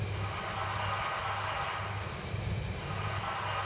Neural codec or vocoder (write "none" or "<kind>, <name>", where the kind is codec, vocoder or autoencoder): none